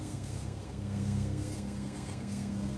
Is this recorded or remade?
remade